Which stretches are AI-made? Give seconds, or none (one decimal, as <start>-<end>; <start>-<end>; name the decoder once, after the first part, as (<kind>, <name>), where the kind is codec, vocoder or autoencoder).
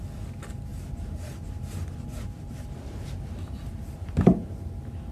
0.7-3.8 (vocoder, BigVGAN v2)